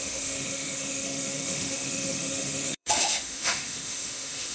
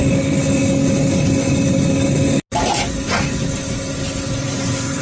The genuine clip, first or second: second